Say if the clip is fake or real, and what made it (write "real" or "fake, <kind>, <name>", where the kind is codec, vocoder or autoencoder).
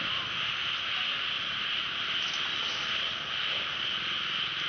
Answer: real